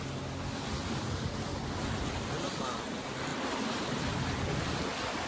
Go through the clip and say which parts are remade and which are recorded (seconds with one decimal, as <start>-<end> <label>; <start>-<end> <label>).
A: 0.0-5.3 recorded